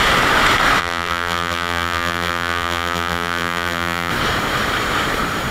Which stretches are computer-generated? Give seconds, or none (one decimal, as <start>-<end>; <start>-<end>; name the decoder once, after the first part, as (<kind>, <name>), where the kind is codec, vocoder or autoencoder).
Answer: 0.8-4.1 (vocoder, BigVGAN v2)